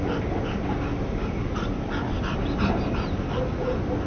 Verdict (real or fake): real